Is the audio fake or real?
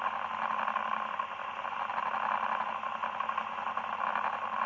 real